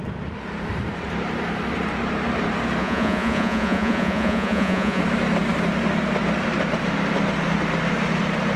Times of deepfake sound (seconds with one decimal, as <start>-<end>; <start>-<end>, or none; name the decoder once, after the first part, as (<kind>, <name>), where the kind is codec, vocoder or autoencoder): 2.8-5.0 (vocoder, Vocos)